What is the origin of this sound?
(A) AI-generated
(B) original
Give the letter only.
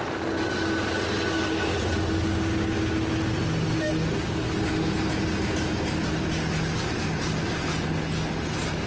B